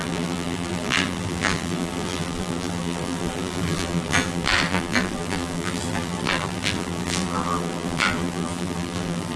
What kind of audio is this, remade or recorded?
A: remade